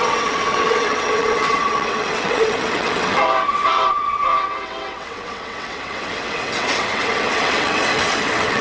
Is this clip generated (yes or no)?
yes